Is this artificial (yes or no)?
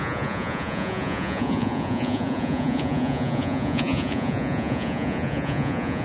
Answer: yes